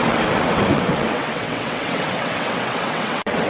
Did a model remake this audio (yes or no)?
yes